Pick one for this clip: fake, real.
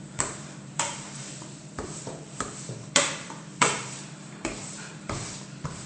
fake